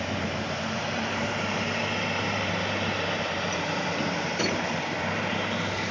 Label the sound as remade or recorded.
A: remade